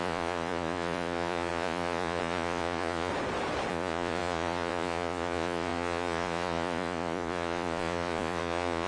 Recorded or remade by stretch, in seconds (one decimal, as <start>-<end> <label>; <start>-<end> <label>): 0.0-3.1 remade; 3.1-3.7 recorded; 3.7-8.9 remade